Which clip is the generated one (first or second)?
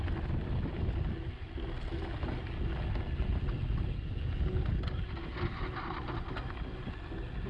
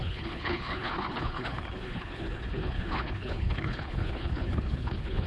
second